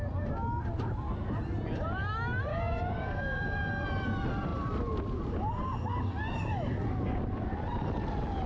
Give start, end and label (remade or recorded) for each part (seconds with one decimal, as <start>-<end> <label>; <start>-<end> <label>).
0.0-2.5 recorded; 2.5-3.7 remade; 3.7-8.5 recorded